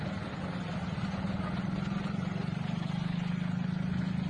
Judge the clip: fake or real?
real